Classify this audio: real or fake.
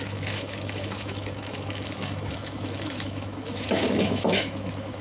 fake